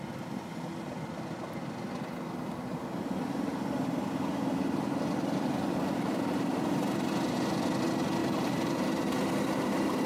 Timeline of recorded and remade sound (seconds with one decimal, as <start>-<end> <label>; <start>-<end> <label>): 0.0-8.2 recorded; 8.2-9.0 remade; 9.0-10.1 recorded